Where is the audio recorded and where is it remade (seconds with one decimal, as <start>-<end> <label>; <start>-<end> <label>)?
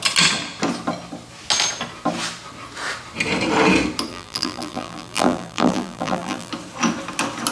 0.0-4.1 recorded; 4.1-6.5 remade; 6.5-7.5 recorded